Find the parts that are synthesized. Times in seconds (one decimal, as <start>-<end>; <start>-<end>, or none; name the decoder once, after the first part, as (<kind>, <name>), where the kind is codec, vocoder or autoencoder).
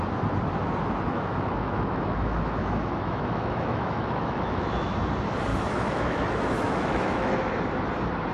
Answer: 1.1-4.9 (autoencoder, DAC-VAE); 5.5-7.3